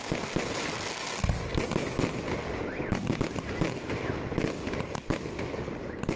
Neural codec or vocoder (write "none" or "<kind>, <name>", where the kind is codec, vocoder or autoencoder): none